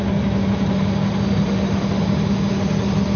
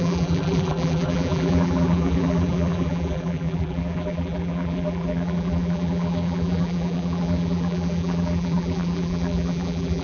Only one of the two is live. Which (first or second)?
first